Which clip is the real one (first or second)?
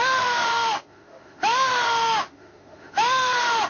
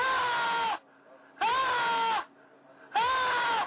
second